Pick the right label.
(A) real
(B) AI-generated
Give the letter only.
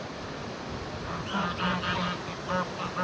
A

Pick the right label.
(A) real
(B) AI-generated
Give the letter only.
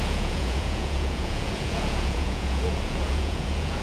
B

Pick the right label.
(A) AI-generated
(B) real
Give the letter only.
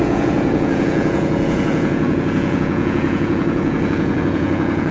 A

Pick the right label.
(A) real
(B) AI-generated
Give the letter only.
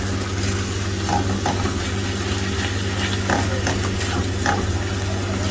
A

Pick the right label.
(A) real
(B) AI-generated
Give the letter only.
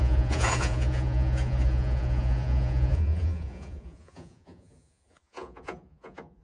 B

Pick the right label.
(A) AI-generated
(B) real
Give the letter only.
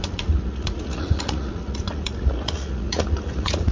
A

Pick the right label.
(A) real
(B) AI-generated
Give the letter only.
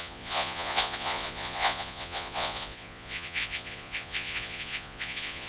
B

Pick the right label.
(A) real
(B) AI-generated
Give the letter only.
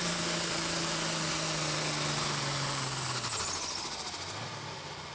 A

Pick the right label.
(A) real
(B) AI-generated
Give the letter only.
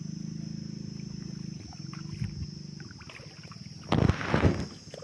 A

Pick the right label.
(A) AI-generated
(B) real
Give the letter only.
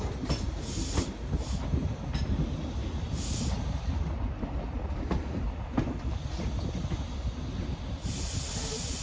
B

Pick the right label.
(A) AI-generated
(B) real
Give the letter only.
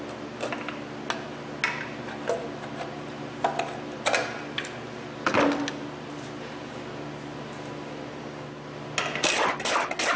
B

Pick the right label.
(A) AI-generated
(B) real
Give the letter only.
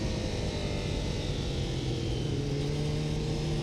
B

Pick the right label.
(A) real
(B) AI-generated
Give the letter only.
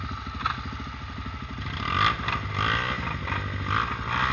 A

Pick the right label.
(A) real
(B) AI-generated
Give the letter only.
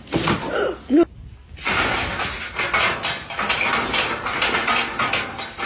A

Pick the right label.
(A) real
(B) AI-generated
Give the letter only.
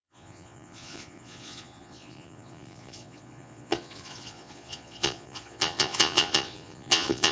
B